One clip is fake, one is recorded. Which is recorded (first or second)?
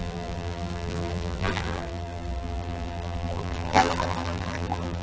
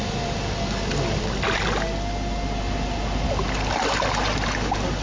second